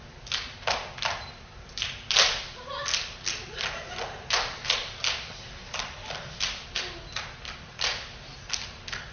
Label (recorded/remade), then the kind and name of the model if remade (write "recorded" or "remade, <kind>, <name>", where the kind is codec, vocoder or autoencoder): recorded